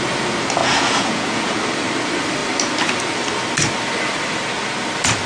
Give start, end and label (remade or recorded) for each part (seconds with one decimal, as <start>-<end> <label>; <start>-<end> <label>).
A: 0.0-0.6 recorded; 0.6-1.6 remade; 1.6-5.3 recorded